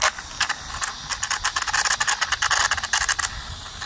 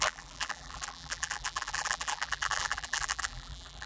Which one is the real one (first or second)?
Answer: first